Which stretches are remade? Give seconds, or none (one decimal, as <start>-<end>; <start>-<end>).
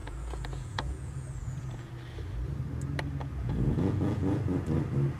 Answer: 0.0-1.9; 3.4-4.4